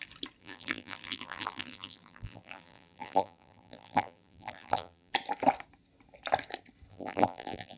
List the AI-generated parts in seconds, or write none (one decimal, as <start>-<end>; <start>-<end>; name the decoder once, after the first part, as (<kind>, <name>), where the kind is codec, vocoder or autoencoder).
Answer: 0.4-5.1 (vocoder, BigVGAN v2); 6.9-7.8